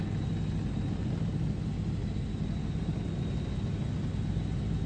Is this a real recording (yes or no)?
yes